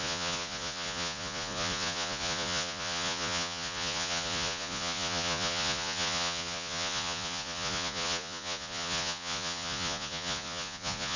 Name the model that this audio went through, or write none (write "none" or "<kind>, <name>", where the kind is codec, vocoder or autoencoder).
vocoder, Vocos